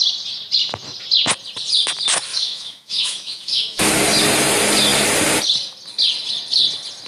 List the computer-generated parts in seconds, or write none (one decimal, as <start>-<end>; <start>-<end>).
2.3-3.9